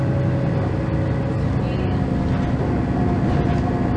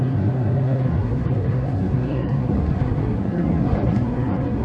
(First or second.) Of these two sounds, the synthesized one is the second